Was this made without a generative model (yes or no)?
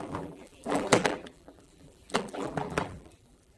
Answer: no